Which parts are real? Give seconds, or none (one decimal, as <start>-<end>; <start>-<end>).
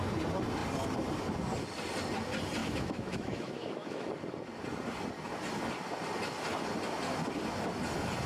0.0-2.6; 4.1-8.3